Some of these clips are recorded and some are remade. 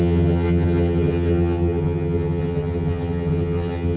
remade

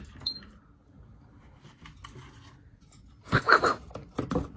recorded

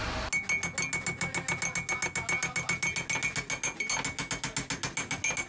recorded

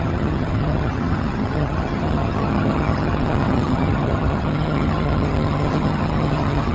remade